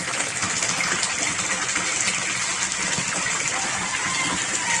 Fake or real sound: real